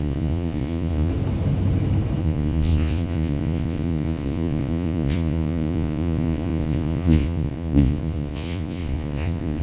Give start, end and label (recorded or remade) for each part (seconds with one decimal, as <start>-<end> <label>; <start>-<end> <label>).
0.0-1.1 remade; 1.1-2.2 recorded; 2.2-9.6 remade